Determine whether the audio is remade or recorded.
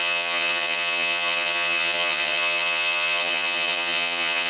remade